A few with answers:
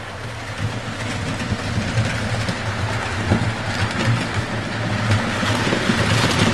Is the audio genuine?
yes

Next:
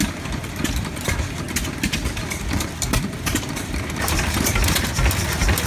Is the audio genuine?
yes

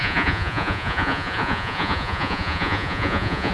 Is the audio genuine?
no